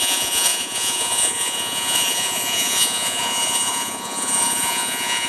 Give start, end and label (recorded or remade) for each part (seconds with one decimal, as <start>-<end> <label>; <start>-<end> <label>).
0.0-5.3 remade